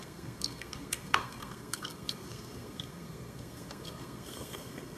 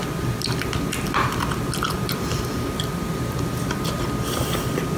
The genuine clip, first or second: second